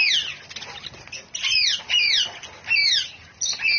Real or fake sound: real